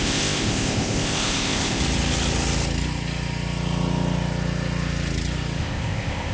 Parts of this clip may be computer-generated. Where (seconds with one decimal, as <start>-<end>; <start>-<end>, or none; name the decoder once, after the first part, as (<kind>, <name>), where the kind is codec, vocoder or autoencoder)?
0.0-1.8 (codec, ZipCodec); 5.6-6.3